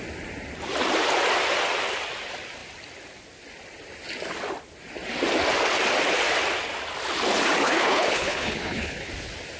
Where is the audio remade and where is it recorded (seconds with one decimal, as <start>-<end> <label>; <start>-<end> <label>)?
0.0-7.6 recorded; 7.6-9.1 remade; 9.1-9.6 recorded